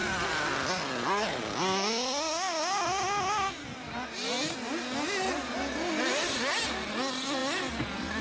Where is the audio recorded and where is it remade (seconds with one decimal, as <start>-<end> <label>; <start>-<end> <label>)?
0.0-8.2 recorded